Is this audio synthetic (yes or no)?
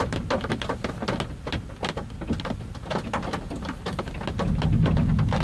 no